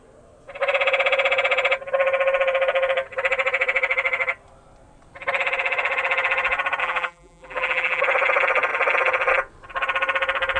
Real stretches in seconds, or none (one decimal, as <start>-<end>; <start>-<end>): 0.0-6.8; 8.0-10.6